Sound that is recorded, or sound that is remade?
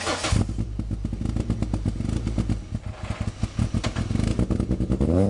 recorded